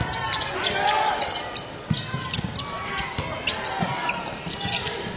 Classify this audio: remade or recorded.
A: recorded